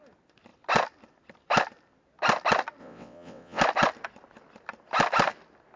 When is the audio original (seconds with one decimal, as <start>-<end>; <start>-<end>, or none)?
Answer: 0.0-2.8; 3.6-5.8